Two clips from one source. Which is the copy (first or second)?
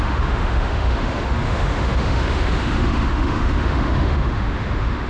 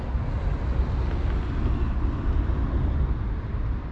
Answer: first